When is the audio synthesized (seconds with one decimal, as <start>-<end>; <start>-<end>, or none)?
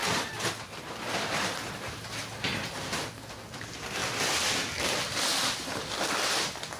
4.0-6.2